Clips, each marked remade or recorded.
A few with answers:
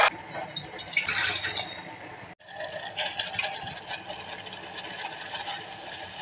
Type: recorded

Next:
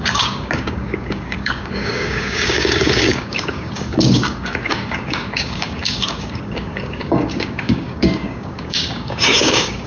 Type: remade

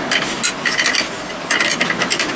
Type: recorded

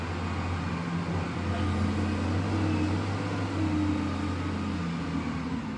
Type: recorded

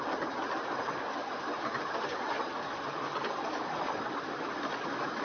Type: recorded